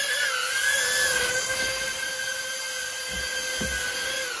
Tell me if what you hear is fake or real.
real